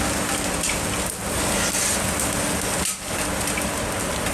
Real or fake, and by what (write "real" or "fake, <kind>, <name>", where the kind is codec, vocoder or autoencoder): real